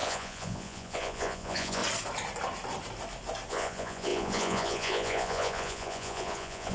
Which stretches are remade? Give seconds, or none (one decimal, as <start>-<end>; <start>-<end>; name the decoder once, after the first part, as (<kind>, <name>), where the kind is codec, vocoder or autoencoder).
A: 0.0-1.8 (vocoder, Vocos); 3.5-6.7